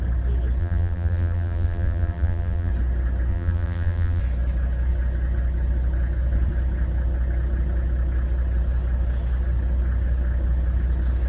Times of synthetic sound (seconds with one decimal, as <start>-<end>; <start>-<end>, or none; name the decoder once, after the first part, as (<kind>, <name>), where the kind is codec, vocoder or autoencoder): 0.6-2.7 (vocoder, BigVGAN v2); 3.3-4.2